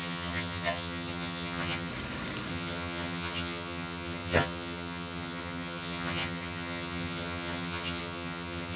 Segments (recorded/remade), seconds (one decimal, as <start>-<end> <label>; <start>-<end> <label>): 0.0-1.9 remade; 1.9-2.5 recorded; 2.5-8.8 remade